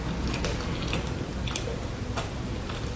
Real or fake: real